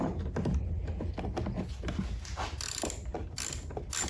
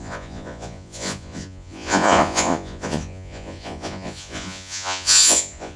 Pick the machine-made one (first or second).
second